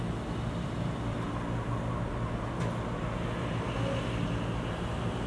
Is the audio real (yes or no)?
yes